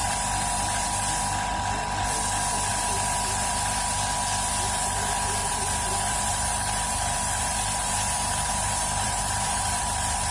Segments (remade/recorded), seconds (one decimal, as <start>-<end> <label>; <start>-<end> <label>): 0.0-5.4 recorded; 5.4-10.3 remade